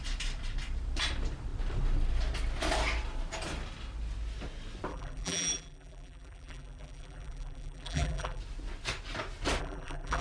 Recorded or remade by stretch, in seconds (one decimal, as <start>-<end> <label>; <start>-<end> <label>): 0.0-4.9 recorded; 4.9-8.4 remade; 8.4-9.6 recorded; 9.6-10.2 remade